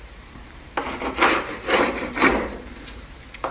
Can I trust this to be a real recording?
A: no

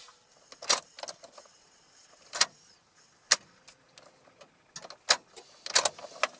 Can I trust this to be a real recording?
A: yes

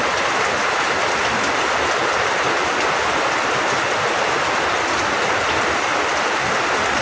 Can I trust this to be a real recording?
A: no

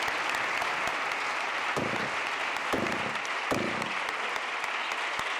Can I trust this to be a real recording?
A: yes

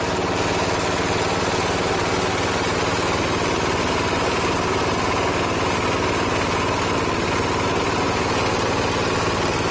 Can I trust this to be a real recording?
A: yes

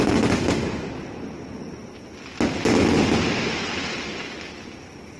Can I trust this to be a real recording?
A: yes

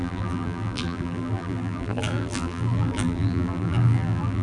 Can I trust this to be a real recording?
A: no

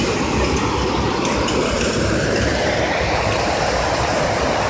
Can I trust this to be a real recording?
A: yes